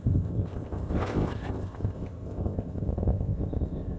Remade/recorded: remade